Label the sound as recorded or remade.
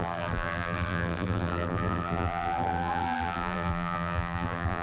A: remade